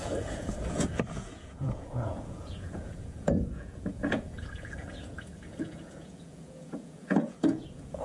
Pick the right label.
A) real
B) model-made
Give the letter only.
B